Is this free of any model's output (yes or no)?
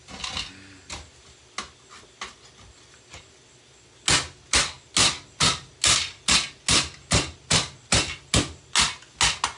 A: yes